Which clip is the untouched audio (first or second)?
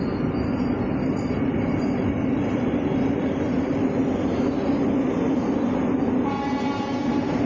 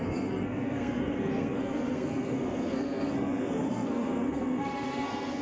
first